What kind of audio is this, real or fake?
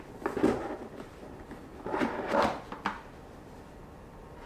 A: real